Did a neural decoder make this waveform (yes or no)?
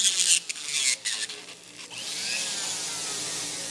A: no